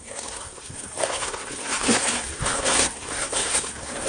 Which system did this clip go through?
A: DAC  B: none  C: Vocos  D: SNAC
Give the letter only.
D